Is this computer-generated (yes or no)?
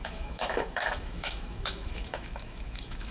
yes